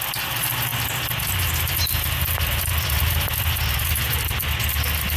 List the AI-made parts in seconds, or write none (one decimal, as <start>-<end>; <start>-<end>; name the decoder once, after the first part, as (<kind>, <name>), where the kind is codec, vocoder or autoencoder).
none